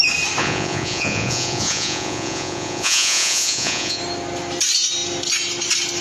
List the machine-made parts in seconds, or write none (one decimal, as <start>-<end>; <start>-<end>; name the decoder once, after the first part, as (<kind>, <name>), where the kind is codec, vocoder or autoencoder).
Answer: 0.4-4.0 (vocoder, Vocos)